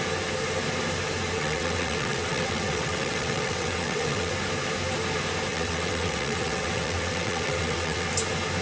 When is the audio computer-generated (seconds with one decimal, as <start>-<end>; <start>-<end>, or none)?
1.4-4.3; 5.5-8.1